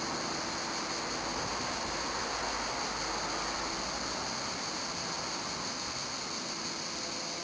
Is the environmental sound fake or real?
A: real